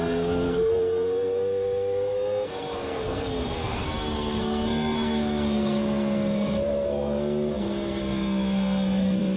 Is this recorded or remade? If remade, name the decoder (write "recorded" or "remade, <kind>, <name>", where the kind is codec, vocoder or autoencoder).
remade, codec, SNAC